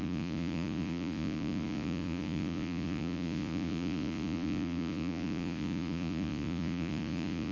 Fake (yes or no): yes